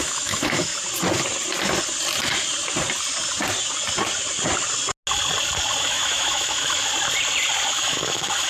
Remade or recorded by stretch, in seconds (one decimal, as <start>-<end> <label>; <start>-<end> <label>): 0.0-0.7 remade; 0.7-5.8 recorded; 5.8-6.9 remade; 6.9-7.7 recorded; 7.7-8.5 remade